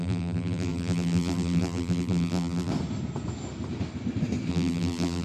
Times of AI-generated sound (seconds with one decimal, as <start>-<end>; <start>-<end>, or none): 0.0-2.7; 4.5-5.2

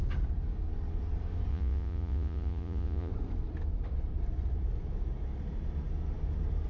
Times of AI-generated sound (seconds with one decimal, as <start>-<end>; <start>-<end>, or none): 1.5-3.1

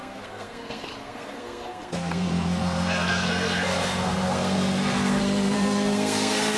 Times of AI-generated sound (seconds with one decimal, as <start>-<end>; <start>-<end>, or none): 0.0-6.6

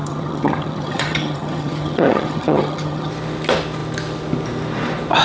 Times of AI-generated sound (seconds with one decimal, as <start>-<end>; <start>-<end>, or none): 0.0-3.1

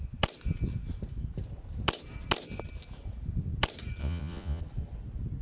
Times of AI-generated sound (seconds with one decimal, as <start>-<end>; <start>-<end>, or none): 4.0-4.6